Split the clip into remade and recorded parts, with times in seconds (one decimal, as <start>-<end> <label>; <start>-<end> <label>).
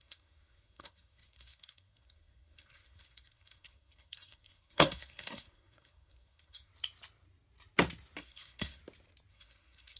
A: 0.0-6.7 remade; 6.7-8.2 recorded; 8.2-8.8 remade; 8.8-9.3 recorded; 9.3-10.0 remade